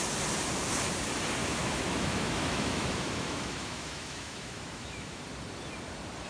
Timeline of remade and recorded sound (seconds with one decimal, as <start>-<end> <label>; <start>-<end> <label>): 0.0-1.4 recorded; 1.4-5.2 remade; 5.2-6.3 recorded